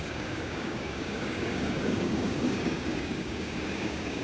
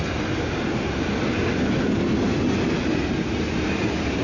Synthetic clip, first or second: first